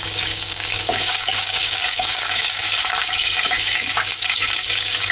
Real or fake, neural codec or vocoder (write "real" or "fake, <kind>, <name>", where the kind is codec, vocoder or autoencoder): fake, codec, DAC